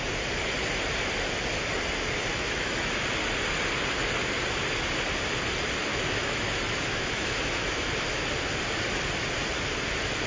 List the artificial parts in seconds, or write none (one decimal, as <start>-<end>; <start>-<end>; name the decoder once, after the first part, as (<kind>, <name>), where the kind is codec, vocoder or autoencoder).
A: 2.3-2.9 (autoencoder, DAC-VAE); 5.9-7.9